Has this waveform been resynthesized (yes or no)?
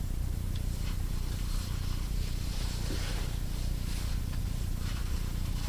yes